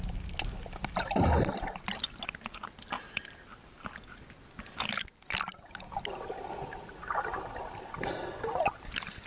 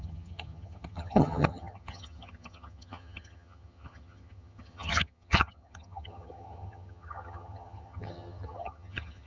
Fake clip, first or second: second